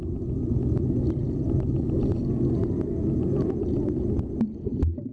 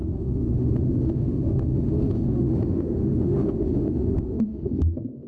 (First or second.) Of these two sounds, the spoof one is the second